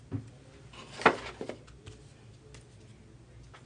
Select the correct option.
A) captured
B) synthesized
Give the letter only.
A